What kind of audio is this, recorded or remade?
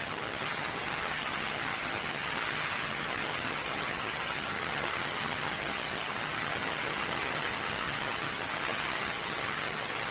remade